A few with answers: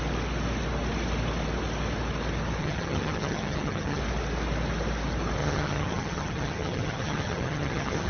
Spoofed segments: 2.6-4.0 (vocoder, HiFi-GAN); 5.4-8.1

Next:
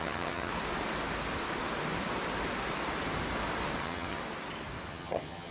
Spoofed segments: 0.0-0.5 (vocoder, HiFi-GAN); 3.8-4.2; 4.9-5.5

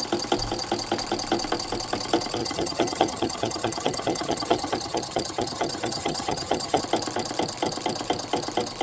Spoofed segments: 2.4-6.8 (vocoder, HiFi-GAN)